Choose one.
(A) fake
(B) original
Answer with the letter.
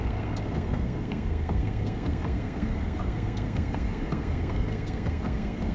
A